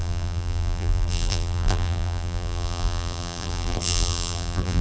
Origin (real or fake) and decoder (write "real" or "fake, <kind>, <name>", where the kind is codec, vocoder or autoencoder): fake, vocoder, BigVGAN v2